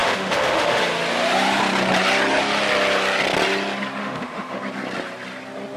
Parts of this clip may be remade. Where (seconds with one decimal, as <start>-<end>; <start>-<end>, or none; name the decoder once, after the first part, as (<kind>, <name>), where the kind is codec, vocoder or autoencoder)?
0.0-0.8 (autoencoder, DAC-VAE); 4.0-4.6